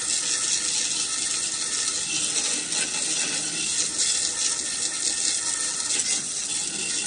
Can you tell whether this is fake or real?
real